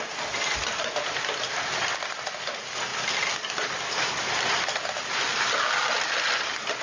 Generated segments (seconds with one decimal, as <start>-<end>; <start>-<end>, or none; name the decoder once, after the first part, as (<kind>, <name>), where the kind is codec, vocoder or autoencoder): none